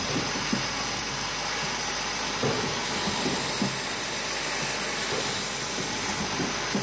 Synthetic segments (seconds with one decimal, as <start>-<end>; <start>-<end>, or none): none